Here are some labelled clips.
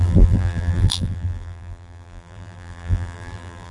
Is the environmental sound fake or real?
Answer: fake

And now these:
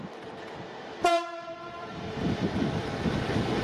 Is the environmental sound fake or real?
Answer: fake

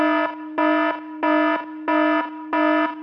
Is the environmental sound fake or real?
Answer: real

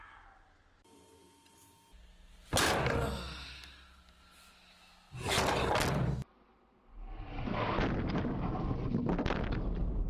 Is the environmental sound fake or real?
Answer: real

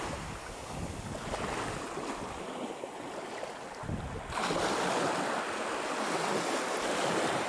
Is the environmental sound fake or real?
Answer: real